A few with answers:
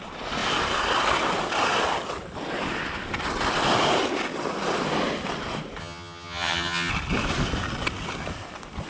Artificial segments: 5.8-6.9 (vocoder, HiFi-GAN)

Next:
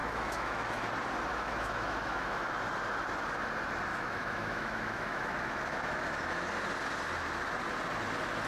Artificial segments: 0.0-0.9 (autoencoder, DAC-VAE); 1.3-2.5; 3.9-6.5